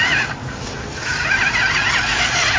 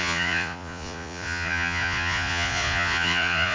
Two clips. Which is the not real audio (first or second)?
second